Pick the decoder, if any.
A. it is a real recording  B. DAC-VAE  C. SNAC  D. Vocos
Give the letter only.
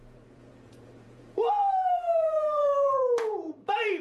D